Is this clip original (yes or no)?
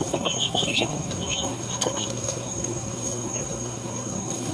no